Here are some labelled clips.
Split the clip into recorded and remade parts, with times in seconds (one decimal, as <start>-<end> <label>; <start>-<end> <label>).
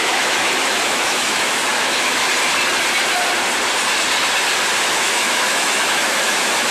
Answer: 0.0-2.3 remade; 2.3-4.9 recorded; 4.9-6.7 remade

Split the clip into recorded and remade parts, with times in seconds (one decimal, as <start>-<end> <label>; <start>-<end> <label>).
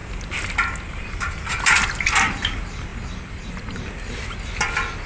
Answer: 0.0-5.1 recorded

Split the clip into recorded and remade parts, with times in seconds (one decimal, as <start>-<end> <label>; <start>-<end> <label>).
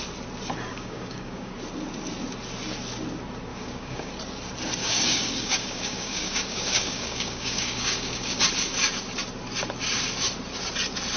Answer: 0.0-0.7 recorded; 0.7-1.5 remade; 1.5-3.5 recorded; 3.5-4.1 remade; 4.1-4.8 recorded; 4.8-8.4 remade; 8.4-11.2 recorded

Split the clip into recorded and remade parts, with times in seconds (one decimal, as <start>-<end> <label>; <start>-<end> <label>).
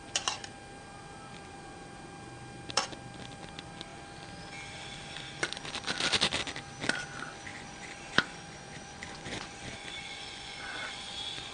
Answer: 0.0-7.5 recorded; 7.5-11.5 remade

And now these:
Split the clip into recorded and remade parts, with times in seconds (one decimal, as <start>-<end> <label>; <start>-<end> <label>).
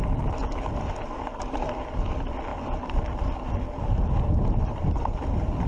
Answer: 0.0-5.7 remade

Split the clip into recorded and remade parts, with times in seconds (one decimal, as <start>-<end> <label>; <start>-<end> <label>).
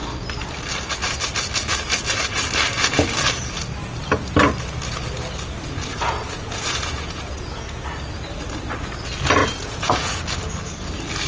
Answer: 0.0-5.9 recorded; 5.9-7.8 remade; 7.8-9.4 recorded; 9.4-10.2 remade; 10.2-11.3 recorded